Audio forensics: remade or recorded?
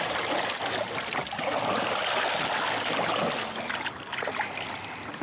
recorded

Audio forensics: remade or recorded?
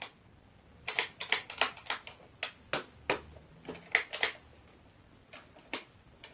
recorded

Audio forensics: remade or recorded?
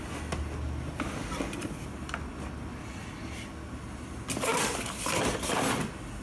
recorded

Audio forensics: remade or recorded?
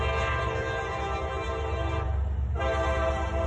remade